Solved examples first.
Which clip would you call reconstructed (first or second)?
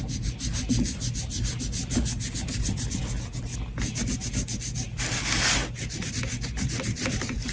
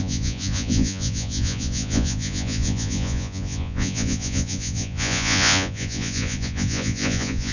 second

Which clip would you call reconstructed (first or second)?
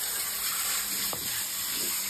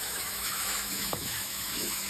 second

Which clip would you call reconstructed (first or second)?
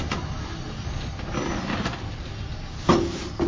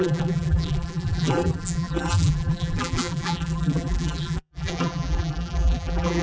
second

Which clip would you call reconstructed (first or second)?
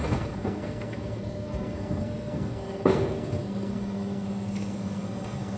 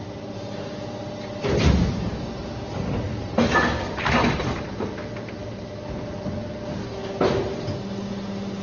first